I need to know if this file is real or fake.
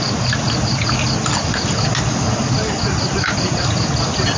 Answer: real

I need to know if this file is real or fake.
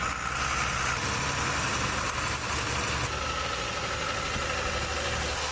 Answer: real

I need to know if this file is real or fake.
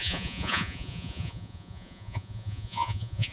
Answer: fake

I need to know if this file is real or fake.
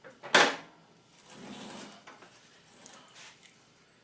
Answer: real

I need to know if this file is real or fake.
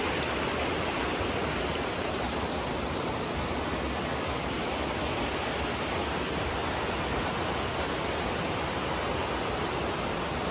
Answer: real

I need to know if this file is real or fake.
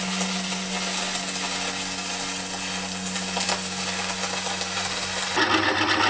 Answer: real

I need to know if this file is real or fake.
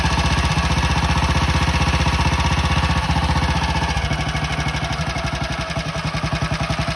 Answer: real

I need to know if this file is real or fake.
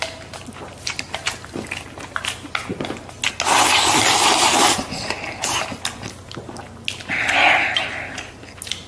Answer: real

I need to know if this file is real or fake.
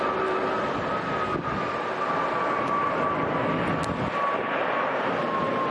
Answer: real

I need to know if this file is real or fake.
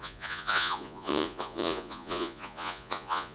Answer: fake